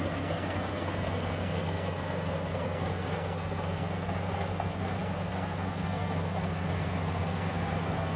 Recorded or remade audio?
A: remade